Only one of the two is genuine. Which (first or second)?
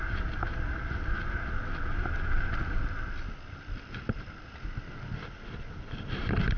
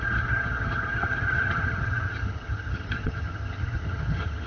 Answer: first